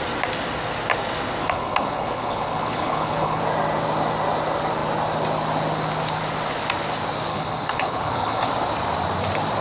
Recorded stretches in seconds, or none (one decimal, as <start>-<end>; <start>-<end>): 0.0-1.4; 3.4-7.3; 8.5-9.6